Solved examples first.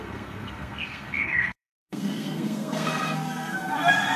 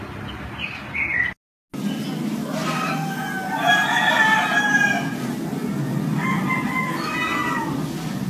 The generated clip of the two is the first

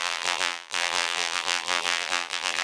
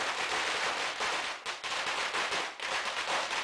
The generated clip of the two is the first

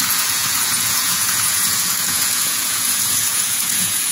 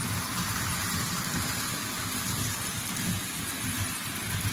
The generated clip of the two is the first